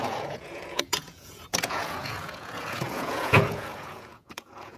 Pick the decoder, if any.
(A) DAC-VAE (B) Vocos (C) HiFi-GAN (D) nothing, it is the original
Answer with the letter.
B